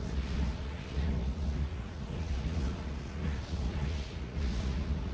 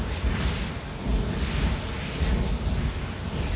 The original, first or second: second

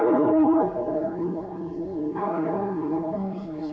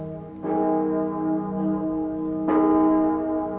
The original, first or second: second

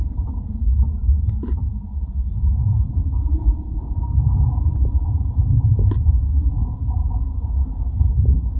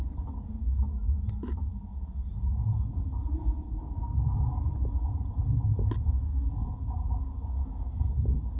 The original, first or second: second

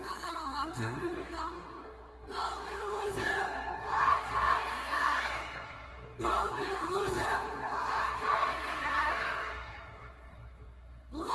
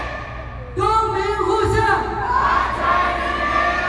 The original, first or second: second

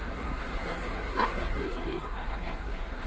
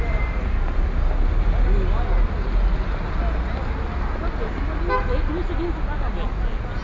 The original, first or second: second